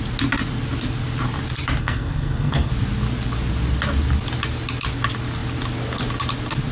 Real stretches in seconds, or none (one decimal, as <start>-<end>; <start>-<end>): 0.0-1.8; 2.7-6.7